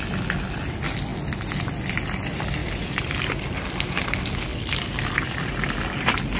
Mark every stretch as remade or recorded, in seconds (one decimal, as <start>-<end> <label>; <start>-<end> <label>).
0.0-2.6 recorded; 2.6-4.1 remade; 4.1-6.4 recorded